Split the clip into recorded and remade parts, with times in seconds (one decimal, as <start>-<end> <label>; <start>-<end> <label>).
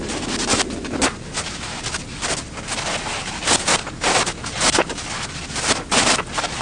0.0-6.6 recorded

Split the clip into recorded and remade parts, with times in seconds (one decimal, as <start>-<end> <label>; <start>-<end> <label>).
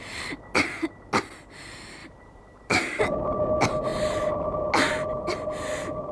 0.0-2.0 recorded; 2.0-3.0 remade; 3.0-6.1 recorded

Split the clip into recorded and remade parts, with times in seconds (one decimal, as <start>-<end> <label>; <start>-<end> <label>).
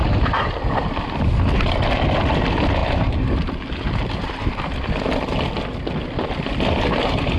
0.0-0.9 recorded; 0.9-2.8 remade; 2.8-7.4 recorded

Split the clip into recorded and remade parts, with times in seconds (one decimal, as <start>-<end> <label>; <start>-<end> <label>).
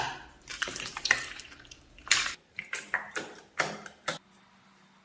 0.0-0.5 recorded; 0.5-3.5 remade; 3.5-5.0 recorded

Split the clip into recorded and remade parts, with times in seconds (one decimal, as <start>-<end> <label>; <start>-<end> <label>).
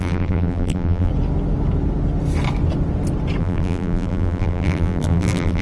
0.0-1.1 remade; 1.1-3.4 recorded; 3.4-5.6 remade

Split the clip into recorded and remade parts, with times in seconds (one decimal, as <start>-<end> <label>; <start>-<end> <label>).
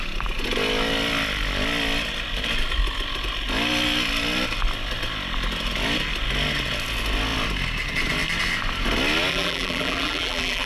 0.0-9.3 recorded; 9.3-10.7 remade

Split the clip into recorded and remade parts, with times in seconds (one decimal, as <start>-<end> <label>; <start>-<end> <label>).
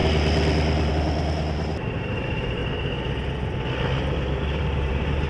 0.0-0.9 recorded; 0.9-2.6 remade; 2.6-4.4 recorded; 4.4-5.3 remade